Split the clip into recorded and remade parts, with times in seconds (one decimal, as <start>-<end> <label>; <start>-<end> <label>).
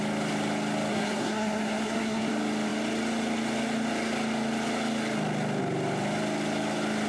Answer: 0.0-0.9 recorded; 0.9-2.3 remade; 2.3-7.1 recorded